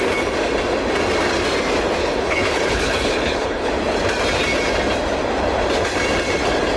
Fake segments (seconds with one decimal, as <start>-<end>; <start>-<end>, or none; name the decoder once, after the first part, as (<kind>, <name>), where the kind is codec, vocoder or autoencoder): 2.0-3.7 (codec, HILCodec)